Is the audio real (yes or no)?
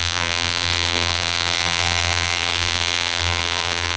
no